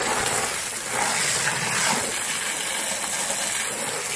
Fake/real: real